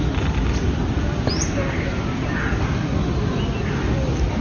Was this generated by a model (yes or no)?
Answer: no